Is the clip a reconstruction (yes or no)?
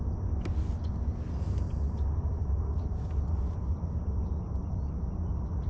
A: no